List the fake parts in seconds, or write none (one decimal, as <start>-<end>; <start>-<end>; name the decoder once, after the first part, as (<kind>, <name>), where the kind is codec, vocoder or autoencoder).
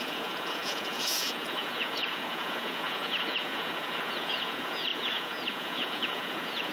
0.0-6.7 (vocoder, Vocos)